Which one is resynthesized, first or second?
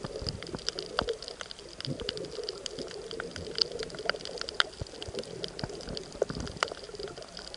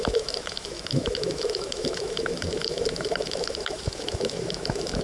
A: second